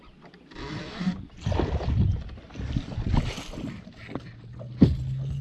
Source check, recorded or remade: recorded